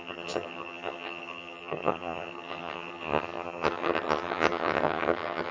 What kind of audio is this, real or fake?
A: fake